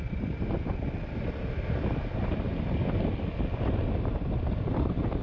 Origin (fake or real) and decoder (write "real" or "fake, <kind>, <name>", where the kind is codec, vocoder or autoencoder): real